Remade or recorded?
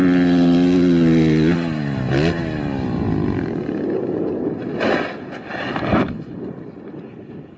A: recorded